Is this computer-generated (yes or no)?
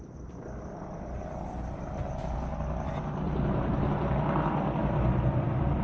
no